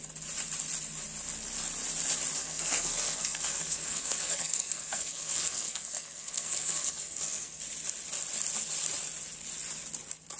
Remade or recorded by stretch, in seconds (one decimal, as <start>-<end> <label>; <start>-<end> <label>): 0.0-2.4 recorded; 2.4-7.6 remade; 7.6-10.4 recorded

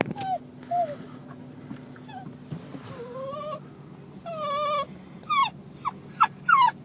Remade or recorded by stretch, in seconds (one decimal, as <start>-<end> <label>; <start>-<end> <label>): 0.0-6.8 recorded

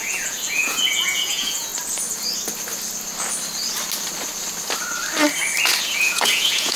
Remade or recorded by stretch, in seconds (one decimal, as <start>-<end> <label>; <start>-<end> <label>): 0.0-1.7 remade; 1.7-5.8 recorded; 5.8-6.8 remade

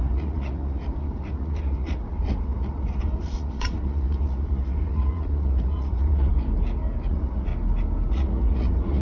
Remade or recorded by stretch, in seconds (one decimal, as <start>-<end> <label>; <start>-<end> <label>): 0.0-6.3 remade; 6.3-7.1 recorded; 7.1-7.5 remade; 7.5-8.1 recorded; 8.1-9.0 remade